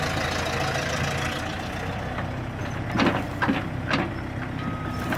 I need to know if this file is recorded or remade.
recorded